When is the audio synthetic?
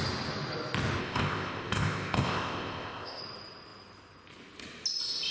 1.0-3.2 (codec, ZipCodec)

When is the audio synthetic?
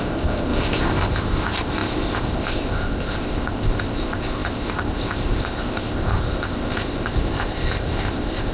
0.0-8.5 (codec, ZipCodec)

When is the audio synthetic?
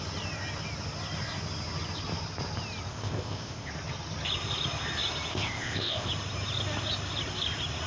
2.9-3.7 (codec, ZipCodec); 5.3-6.1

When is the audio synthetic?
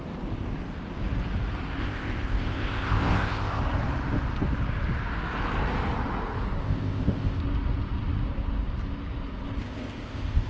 1.8-3.6 (codec, ZipCodec); 6.6-7.4; 9.6-10.5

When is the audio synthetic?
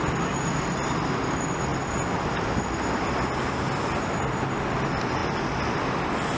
none